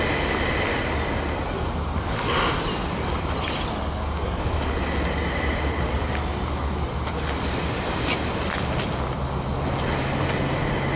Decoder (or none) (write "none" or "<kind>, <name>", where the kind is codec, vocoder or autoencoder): none